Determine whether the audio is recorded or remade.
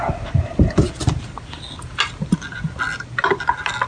recorded